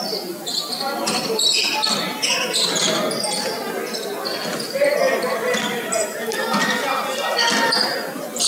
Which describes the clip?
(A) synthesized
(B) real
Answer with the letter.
B